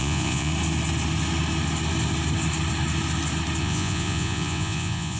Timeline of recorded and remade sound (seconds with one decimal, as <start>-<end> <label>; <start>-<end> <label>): 0.0-0.5 remade; 0.5-3.6 recorded; 3.6-5.2 remade